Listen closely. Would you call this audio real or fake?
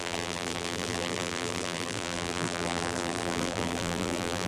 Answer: fake